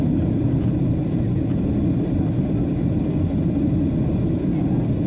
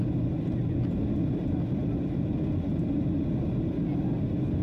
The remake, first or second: first